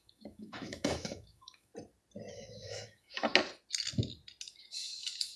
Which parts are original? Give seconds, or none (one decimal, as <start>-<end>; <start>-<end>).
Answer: 1.7-2.3; 3.3-4.5